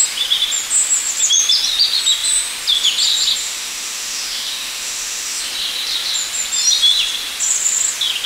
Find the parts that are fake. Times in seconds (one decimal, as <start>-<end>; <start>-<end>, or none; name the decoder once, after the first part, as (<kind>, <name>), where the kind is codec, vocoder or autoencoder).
3.4-5.4 (autoencoder, DAC-VAE)